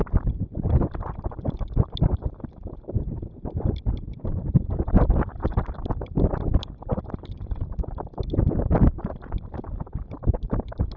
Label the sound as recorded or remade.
recorded